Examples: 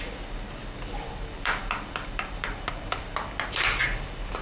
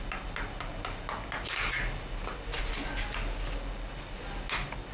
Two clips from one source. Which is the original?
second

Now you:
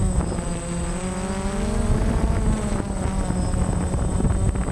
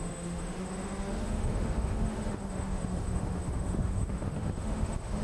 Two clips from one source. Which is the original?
first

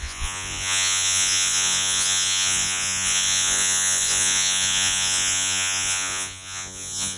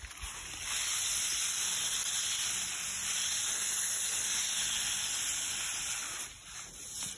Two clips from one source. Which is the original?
second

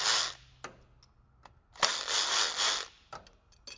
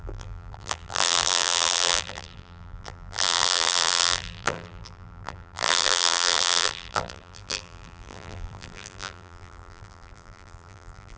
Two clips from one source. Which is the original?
first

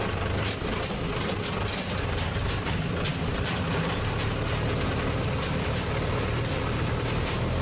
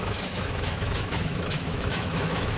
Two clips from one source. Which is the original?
first